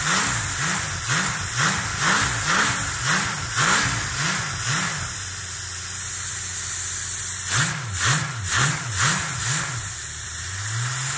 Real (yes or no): yes